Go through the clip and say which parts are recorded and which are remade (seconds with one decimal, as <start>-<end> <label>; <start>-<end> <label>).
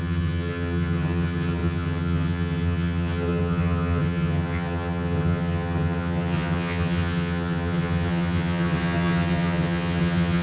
0.0-10.4 remade